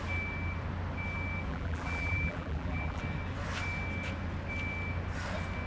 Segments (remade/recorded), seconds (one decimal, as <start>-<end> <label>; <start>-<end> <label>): 0.0-1.5 recorded; 1.5-3.0 remade; 3.0-5.7 recorded